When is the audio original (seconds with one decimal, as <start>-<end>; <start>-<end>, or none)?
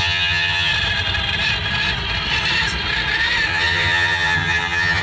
0.7-3.5